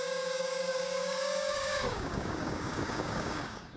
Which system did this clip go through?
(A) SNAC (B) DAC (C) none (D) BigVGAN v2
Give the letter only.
B